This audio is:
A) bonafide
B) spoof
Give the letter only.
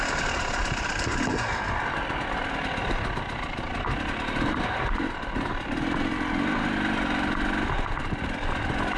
A